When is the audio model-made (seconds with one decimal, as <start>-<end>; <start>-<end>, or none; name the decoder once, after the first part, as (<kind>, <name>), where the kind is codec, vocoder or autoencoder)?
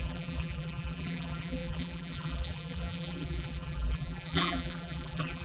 0.0-5.4 (vocoder, BigVGAN v2)